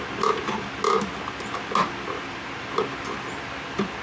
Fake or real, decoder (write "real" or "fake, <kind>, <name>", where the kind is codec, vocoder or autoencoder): real